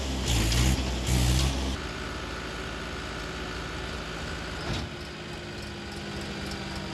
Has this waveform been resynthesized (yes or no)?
no